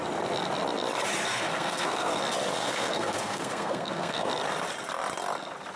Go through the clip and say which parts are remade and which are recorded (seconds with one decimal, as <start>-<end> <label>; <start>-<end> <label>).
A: 0.0-1.3 recorded; 1.3-2.2 remade; 2.2-2.6 recorded; 2.6-4.3 remade; 4.3-5.8 recorded